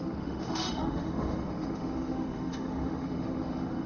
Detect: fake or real fake